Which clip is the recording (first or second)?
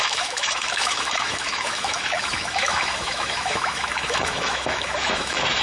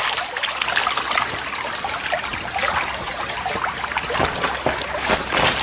second